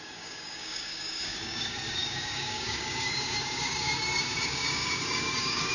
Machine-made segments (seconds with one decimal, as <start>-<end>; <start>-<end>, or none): 0.0-5.7